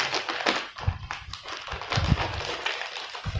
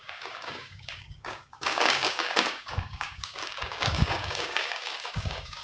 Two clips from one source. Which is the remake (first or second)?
second